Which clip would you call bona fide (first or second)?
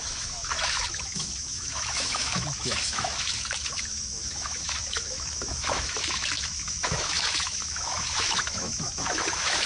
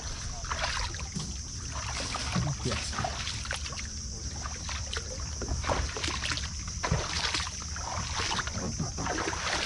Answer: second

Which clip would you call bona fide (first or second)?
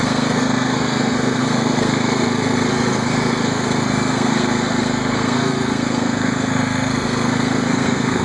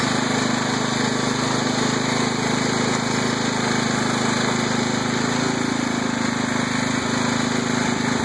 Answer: second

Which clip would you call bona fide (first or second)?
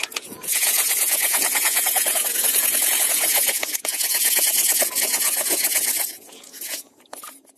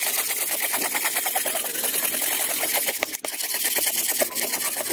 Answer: second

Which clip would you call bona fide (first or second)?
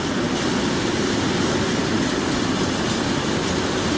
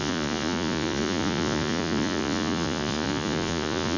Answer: first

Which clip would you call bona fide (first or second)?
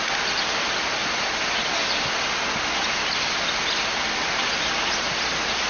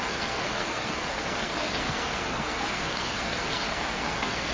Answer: first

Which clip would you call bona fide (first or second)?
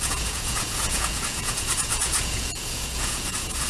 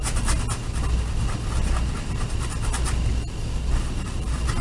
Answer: second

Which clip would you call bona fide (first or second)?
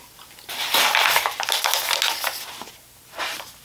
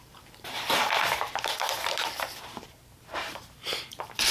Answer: first